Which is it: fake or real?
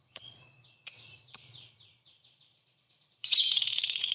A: fake